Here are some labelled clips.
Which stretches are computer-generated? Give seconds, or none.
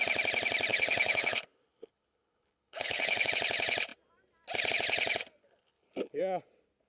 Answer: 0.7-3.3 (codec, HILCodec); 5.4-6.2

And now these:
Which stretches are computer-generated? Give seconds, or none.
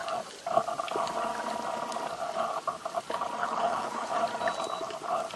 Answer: 3.4-4.2 (codec, HILCodec)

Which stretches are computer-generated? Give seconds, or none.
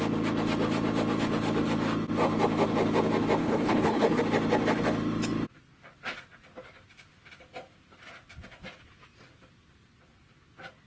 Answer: 3.4-4.2 (codec, HILCodec)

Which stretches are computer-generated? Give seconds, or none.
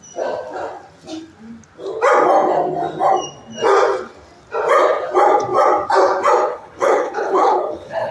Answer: 6.5-8.1 (codec, HILCodec)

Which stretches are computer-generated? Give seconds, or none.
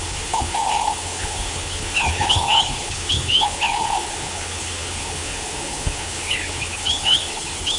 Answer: 0.0-7.8 (codec, HILCodec)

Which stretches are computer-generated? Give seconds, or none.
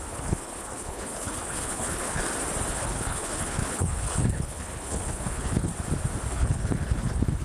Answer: 0.0-2.2 (codec, HILCodec); 2.7-5.7; 6.3-7.4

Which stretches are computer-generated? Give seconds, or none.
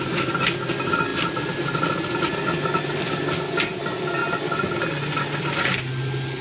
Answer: none